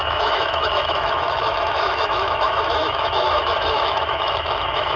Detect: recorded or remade remade